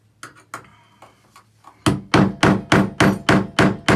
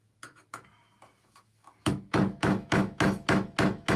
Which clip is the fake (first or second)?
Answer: second